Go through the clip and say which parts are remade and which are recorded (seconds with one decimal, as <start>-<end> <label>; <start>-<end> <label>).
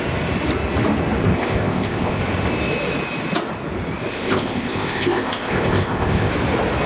0.0-1.2 recorded; 1.2-2.2 remade; 2.2-4.1 recorded; 4.1-6.3 remade; 6.3-6.9 recorded